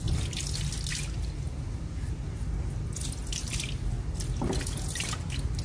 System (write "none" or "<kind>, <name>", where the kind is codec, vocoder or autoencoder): none